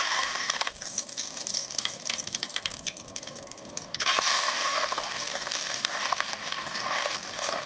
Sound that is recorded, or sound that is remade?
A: remade